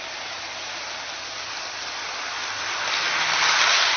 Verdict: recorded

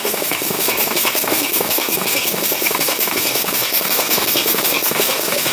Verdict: remade